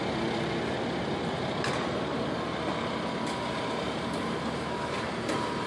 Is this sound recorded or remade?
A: recorded